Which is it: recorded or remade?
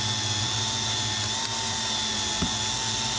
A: recorded